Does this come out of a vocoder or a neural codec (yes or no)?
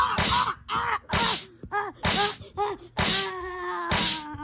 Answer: no